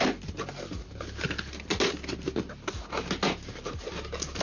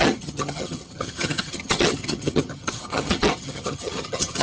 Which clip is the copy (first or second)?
second